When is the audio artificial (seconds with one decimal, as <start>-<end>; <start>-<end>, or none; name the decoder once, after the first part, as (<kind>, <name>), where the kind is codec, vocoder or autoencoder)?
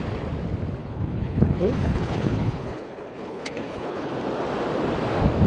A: 0.8-4.1 (codec, HILCodec)